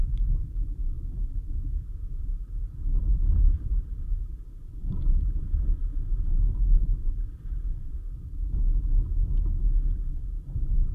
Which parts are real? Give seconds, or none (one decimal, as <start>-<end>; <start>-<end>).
8.7-10.1